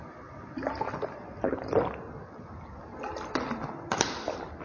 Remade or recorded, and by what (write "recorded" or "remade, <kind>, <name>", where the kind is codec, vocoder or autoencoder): recorded